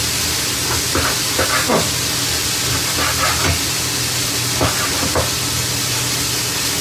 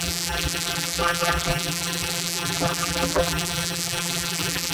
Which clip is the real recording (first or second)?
first